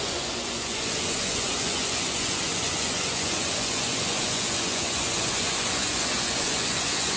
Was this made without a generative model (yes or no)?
no